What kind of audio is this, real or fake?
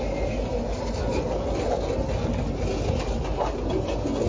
real